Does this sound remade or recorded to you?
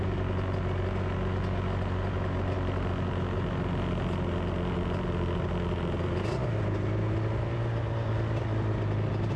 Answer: recorded